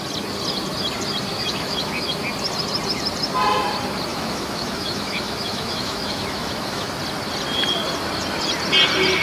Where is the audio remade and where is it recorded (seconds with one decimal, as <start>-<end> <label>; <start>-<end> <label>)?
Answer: 0.0-1.3 recorded; 1.3-2.2 remade; 2.2-4.1 recorded; 4.1-6.9 remade; 6.9-9.2 recorded